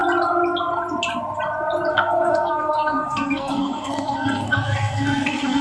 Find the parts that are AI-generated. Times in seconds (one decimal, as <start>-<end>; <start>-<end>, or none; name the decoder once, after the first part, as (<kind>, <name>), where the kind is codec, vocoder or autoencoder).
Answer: 1.9-5.6 (codec, SNAC)

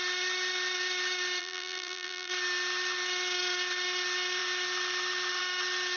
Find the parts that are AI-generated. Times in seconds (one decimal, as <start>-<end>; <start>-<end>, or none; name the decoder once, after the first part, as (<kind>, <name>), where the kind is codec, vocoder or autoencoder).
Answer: 1.4-2.3 (vocoder, BigVGAN v2)

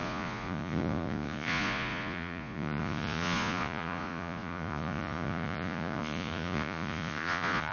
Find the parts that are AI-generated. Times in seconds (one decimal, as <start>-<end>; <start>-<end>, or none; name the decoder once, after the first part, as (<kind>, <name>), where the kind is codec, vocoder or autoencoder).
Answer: 0.0-7.7 (vocoder, Vocos)

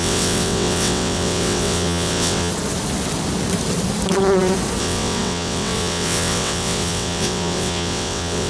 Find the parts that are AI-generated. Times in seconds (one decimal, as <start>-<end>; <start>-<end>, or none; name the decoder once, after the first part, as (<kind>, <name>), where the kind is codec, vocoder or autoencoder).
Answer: 0.0-2.5 (vocoder, WaveNeXt); 4.8-8.5

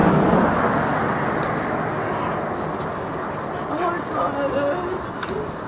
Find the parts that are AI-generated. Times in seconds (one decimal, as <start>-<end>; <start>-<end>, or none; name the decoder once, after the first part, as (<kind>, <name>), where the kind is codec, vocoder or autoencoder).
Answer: none